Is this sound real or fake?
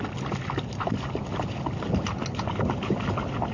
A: real